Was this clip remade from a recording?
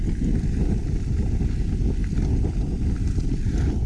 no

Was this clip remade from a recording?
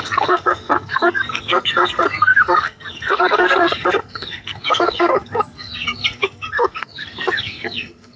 yes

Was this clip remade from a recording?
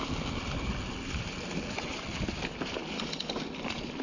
no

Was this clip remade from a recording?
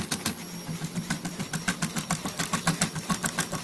no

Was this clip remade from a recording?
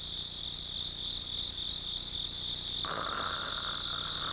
no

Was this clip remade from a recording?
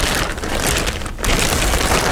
yes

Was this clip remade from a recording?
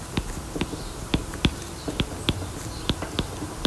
yes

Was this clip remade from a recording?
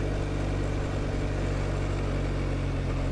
no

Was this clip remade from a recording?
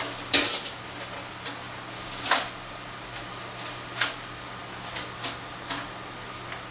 no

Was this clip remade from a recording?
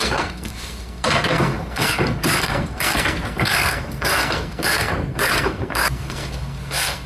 yes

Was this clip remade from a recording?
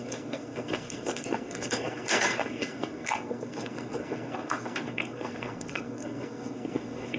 yes